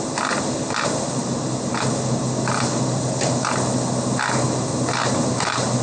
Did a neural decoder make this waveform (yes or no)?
no